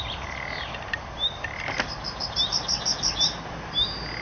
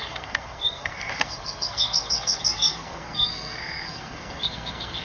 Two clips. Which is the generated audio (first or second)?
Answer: second